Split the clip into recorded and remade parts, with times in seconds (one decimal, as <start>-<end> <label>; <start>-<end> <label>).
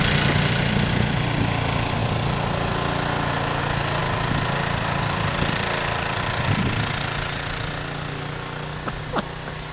0.0-9.7 recorded